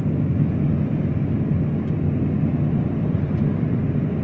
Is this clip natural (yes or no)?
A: yes